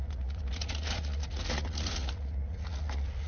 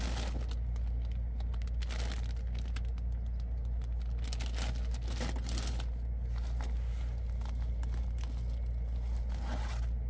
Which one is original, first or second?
second